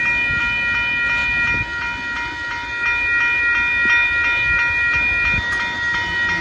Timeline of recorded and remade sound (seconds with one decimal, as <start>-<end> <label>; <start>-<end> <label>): 0.0-6.4 recorded

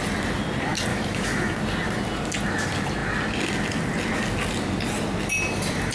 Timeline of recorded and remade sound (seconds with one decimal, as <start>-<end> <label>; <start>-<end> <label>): 0.0-0.9 recorded; 0.9-1.6 remade; 1.6-5.9 recorded